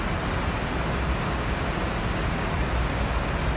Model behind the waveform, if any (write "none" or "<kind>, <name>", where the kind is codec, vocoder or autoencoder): none